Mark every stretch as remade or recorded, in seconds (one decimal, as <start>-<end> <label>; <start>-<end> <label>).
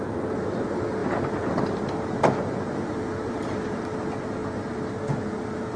0.0-1.0 recorded; 1.0-3.8 remade; 3.8-5.8 recorded